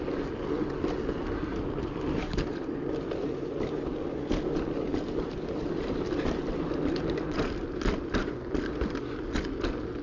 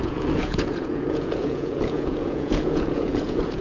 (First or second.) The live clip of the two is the first